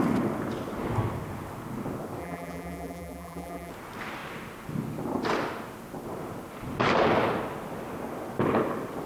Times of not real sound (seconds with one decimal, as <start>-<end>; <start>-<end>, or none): 2.2-3.7